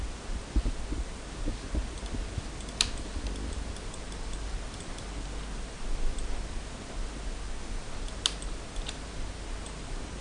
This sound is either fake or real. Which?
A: real